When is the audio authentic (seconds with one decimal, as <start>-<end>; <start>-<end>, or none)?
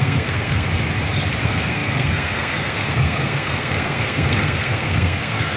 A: 0.7-1.4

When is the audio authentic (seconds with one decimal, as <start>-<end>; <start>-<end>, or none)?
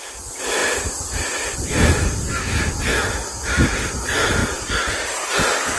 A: 0.0-0.6; 2.4-4.4; 4.9-5.8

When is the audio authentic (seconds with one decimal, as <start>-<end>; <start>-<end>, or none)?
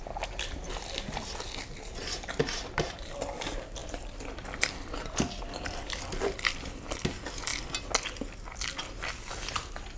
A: 0.0-3.8; 6.6-10.0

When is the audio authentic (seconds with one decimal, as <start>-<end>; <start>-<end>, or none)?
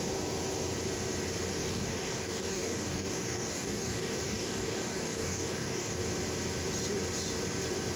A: 0.0-1.6; 6.0-8.0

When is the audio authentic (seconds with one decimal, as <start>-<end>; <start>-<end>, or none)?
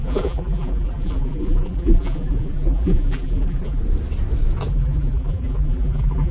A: 3.8-4.7